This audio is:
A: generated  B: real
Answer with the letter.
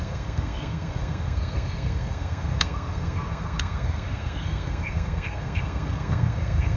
A